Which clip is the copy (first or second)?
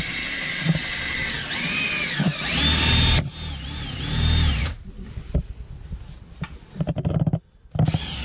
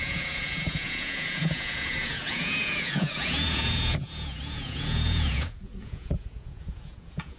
second